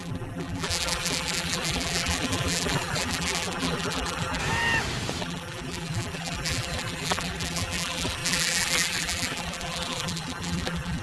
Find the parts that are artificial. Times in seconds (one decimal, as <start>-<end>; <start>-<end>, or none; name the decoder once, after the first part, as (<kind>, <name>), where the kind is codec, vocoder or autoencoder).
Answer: 0.0-4.4 (vocoder, BigVGAN v2); 5.2-11.0